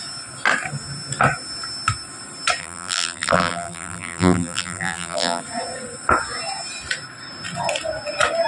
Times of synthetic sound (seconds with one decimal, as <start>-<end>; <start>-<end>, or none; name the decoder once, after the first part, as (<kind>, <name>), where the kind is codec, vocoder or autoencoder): 2.6-5.4 (vocoder, BigVGAN v2)